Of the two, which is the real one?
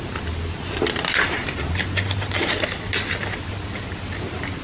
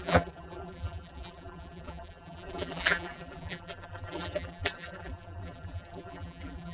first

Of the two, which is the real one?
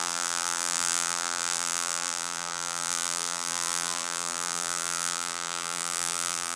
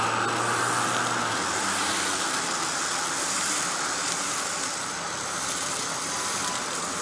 second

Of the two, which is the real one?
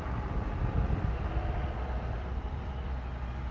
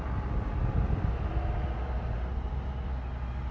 second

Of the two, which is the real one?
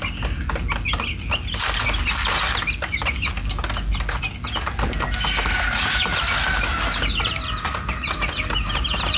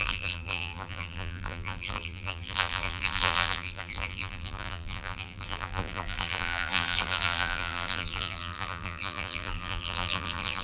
first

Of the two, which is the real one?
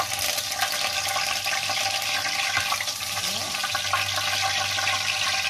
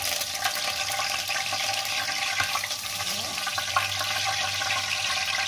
first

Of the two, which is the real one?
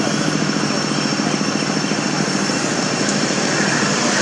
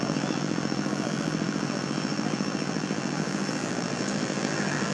first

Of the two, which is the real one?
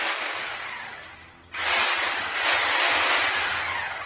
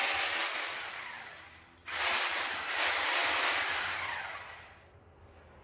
first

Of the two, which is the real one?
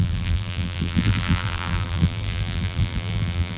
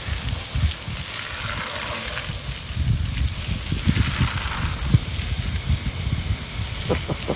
second